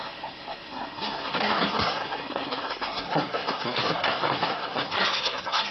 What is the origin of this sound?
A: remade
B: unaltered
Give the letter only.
A